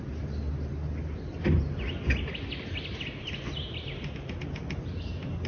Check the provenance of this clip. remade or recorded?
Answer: recorded